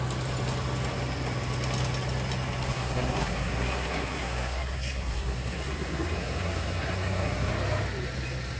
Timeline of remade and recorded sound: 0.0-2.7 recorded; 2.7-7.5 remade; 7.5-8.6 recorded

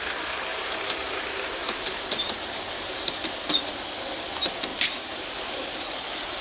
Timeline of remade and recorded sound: 0.0-0.5 recorded; 0.5-3.1 remade; 3.1-4.7 recorded; 4.7-6.4 remade

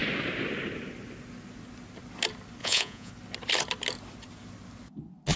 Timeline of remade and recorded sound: 0.0-2.6 recorded; 2.6-3.1 remade; 3.1-5.4 recorded

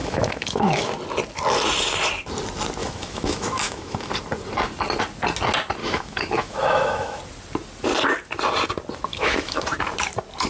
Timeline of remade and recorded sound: 0.0-0.9 remade; 0.9-2.8 recorded; 2.8-4.1 remade; 4.1-5.8 recorded; 5.8-7.2 remade; 7.2-9.1 recorded; 9.1-9.6 remade; 9.6-10.5 recorded

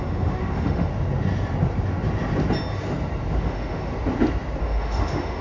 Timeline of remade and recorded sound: 0.0-0.9 remade; 0.9-3.4 recorded; 3.4-3.9 remade; 3.9-4.6 recorded; 4.6-5.4 remade

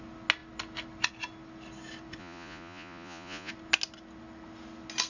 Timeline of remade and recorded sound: 0.0-2.2 recorded; 2.2-3.5 remade; 3.5-5.1 recorded